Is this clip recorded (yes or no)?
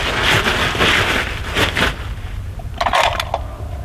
yes